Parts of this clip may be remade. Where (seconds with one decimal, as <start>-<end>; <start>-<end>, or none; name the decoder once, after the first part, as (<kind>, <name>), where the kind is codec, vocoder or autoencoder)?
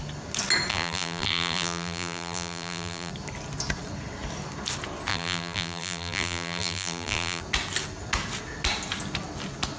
0.7-3.1 (vocoder, BigVGAN v2); 5.1-7.4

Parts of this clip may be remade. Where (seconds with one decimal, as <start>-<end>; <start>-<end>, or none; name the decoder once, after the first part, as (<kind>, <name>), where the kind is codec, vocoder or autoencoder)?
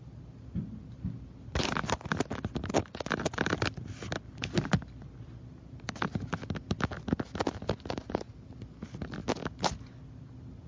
none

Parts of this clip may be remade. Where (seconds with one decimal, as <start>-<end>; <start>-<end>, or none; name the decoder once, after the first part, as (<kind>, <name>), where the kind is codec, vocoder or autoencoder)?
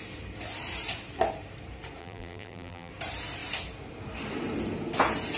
2.0-2.9 (vocoder, BigVGAN v2)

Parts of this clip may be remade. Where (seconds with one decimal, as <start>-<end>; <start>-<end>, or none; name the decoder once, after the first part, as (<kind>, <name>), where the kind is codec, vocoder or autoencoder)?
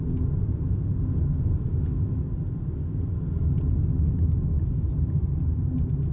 none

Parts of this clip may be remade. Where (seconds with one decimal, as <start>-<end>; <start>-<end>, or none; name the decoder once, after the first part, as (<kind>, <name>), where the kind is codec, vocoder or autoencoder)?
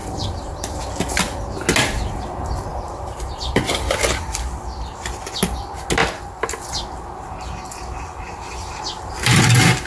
0.0-0.8 (vocoder, BigVGAN v2); 2.7-3.9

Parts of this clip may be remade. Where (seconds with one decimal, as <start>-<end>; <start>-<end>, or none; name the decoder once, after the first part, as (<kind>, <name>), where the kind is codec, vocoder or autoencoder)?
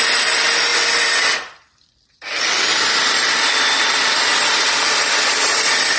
0.0-6.0 (vocoder, BigVGAN v2)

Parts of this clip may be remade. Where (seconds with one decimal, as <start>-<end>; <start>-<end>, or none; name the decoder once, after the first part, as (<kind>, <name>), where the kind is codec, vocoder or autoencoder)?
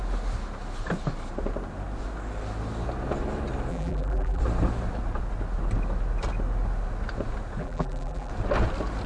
3.7-4.4 (vocoder, BigVGAN v2); 7.6-8.3